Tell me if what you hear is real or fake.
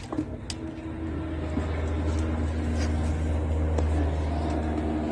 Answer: real